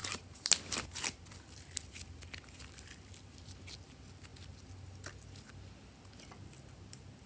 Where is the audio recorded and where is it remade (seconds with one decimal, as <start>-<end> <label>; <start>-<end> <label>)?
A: 0.0-7.3 recorded

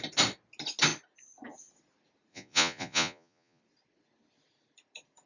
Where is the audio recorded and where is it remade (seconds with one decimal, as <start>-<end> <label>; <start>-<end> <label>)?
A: 0.0-2.3 recorded; 2.3-3.6 remade; 3.6-5.3 recorded

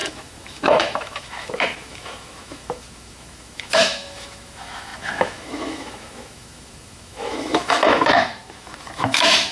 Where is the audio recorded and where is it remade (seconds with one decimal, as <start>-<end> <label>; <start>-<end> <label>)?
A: 0.0-9.5 remade